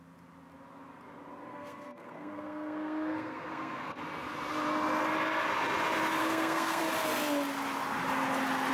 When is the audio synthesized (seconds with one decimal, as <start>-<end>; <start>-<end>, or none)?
1.5-4.0; 6.2-6.8